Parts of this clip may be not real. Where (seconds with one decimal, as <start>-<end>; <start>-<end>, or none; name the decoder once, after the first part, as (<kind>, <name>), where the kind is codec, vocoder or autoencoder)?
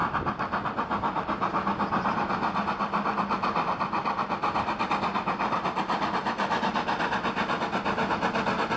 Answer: none